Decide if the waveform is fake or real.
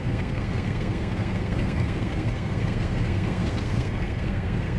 fake